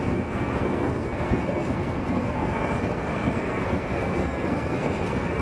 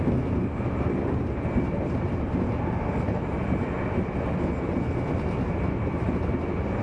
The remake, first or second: first